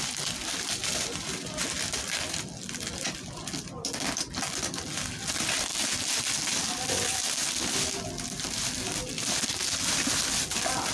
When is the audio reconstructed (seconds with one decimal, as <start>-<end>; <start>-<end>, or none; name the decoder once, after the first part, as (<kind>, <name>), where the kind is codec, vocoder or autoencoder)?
none